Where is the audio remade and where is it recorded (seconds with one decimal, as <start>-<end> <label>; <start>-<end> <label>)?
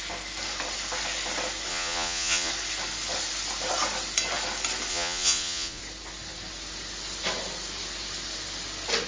0.0-1.7 recorded; 1.7-2.5 remade; 2.5-4.9 recorded; 4.9-5.8 remade; 5.8-9.1 recorded